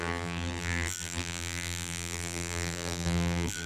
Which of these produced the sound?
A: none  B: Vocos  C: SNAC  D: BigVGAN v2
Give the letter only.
D